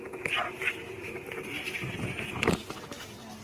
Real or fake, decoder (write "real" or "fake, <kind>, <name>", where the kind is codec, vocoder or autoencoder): real